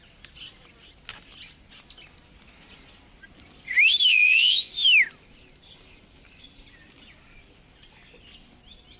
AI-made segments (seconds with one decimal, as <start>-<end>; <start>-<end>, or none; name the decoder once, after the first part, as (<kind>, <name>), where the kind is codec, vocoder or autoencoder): 4.1-4.7 (vocoder, Vocos)